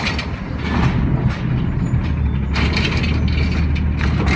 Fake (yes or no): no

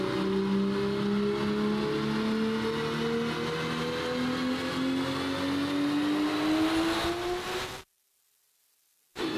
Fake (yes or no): no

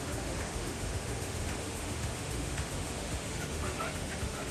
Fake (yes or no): yes